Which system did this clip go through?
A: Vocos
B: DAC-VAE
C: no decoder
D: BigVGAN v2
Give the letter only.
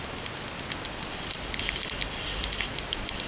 C